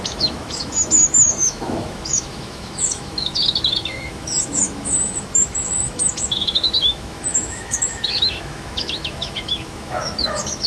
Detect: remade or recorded remade